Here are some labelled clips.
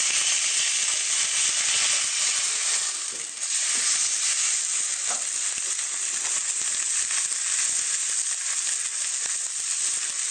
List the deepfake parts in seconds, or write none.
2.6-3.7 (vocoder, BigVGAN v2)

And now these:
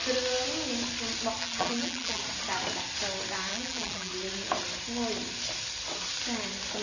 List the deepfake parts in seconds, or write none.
1.4-2.2 (vocoder, BigVGAN v2); 3.5-4.1

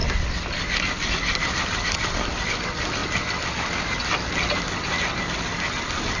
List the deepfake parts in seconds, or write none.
none

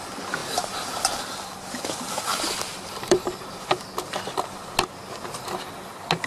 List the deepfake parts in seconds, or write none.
0.4-1.2 (vocoder, BigVGAN v2); 2.3-3.6

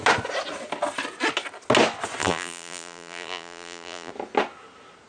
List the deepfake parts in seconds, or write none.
2.2-4.1 (vocoder, BigVGAN v2)

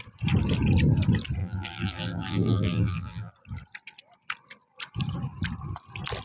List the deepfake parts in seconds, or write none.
1.4-3.3 (vocoder, BigVGAN v2)